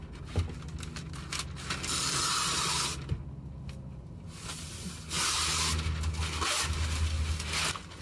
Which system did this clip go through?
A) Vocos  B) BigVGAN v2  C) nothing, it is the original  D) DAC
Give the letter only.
C